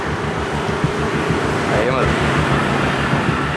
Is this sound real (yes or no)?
yes